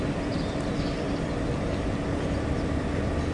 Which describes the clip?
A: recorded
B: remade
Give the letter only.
A